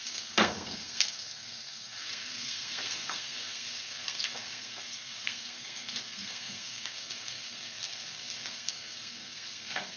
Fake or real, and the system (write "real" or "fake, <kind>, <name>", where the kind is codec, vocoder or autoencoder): fake, codec, SNAC